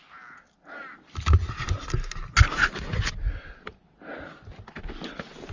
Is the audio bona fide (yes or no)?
yes